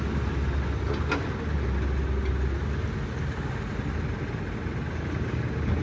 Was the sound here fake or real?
real